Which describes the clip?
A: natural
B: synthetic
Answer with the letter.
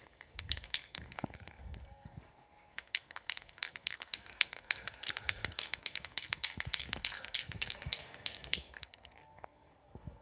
B